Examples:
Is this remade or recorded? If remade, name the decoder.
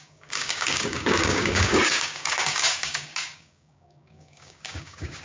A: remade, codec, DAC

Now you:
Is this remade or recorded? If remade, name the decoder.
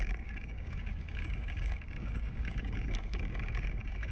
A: remade, codec, DAC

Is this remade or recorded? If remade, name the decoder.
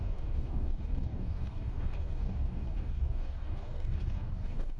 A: remade, codec, DAC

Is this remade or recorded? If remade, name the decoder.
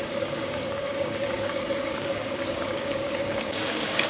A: remade, codec, DAC